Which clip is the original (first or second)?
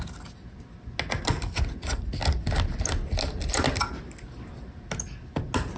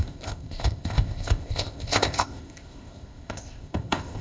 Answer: first